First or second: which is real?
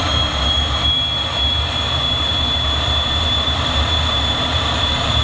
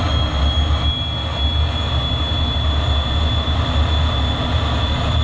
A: second